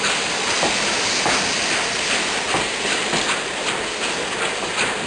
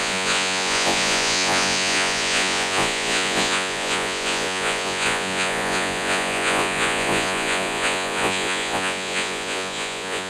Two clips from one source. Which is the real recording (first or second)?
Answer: first